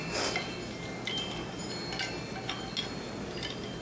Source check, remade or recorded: recorded